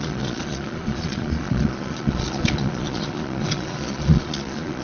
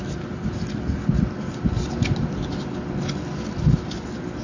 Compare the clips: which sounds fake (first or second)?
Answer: first